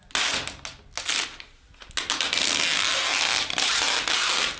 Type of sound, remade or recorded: recorded